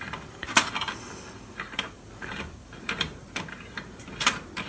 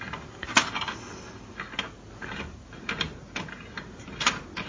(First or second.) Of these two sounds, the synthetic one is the first